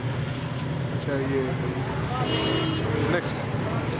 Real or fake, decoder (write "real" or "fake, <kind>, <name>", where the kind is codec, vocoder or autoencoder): real